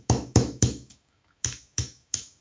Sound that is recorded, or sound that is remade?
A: remade